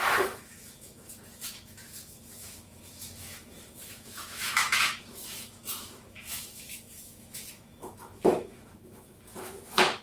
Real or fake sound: fake